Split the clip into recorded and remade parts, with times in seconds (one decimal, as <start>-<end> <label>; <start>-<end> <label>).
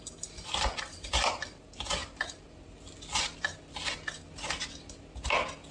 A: 0.0-5.7 recorded